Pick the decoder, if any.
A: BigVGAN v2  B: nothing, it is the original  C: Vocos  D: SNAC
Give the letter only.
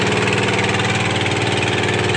B